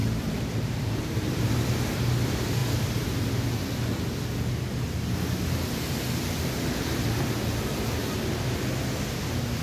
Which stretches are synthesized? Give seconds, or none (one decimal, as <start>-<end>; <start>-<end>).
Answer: 0.0-1.5; 8.0-8.6